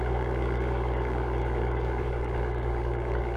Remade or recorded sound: remade